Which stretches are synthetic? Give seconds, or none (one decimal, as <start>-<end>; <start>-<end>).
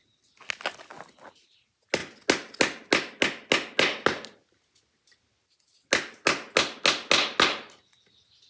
none